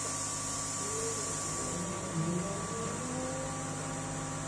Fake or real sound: real